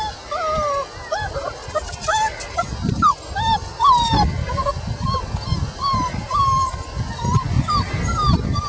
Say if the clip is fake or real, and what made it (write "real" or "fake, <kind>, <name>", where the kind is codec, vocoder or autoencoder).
real